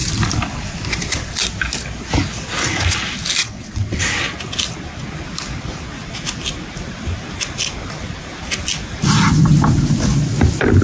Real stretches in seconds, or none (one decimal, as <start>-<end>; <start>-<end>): 0.0-3.4; 4.0-10.8